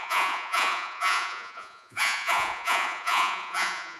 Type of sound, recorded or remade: remade